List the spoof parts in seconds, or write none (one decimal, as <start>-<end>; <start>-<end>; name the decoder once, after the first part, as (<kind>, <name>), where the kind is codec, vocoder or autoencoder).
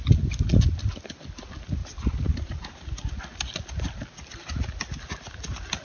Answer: 1.8-3.1 (vocoder, BigVGAN v2)